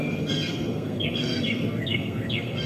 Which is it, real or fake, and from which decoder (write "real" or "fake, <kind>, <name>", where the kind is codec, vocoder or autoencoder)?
fake, codec, SNAC